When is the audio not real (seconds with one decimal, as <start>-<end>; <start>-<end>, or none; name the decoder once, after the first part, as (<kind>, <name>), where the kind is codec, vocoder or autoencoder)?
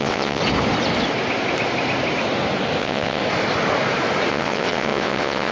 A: 0.0-0.4 (vocoder, WaveNeXt); 2.8-3.2; 4.3-5.5